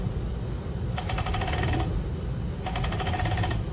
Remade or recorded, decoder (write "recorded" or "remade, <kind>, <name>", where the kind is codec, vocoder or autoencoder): recorded